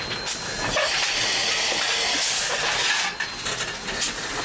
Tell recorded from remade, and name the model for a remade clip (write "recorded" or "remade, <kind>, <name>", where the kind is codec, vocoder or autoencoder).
recorded